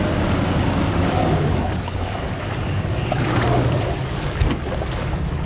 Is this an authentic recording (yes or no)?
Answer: no